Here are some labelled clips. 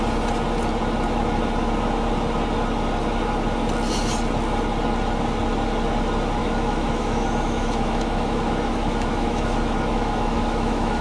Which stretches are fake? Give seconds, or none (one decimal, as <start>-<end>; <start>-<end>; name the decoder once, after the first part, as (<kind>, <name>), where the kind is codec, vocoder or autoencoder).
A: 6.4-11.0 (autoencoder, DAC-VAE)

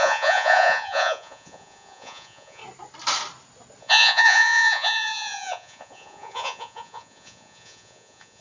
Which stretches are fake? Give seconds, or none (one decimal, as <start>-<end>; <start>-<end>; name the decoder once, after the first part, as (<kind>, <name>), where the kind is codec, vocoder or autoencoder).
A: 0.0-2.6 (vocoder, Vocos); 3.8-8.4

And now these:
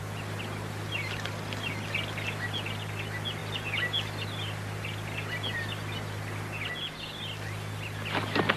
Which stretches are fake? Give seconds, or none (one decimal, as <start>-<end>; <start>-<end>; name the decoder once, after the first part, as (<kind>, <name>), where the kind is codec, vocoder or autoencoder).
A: none

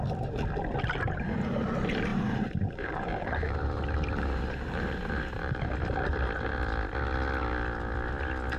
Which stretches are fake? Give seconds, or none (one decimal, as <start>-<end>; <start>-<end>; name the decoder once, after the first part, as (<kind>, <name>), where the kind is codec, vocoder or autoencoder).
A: 2.1-5.6 (vocoder, BigVGAN v2)

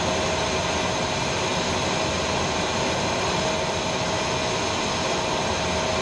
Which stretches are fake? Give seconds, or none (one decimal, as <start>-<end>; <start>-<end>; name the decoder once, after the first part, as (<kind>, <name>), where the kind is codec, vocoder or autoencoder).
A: none

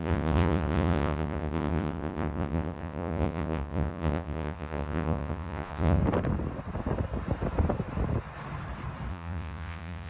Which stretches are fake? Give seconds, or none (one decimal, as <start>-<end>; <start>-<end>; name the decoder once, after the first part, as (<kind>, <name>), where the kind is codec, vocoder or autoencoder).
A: 0.0-6.0 (vocoder, Vocos); 9.1-10.1

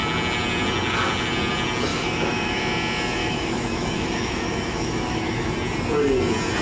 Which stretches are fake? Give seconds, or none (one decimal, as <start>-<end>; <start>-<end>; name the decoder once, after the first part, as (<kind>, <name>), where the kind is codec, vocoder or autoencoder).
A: 1.9-2.6 (autoencoder, DAC-VAE); 3.2-5.5

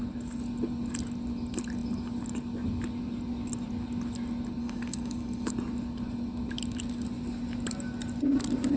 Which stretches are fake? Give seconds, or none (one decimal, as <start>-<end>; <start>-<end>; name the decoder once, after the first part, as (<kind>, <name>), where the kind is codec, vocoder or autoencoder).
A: 4.6-5.5 (codec, DAC)